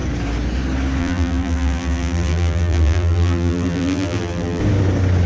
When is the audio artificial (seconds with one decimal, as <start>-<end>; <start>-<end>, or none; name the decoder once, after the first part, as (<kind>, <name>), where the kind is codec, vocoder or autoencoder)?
1.0-4.6 (vocoder, BigVGAN v2)